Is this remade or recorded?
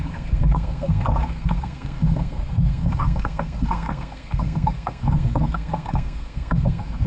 remade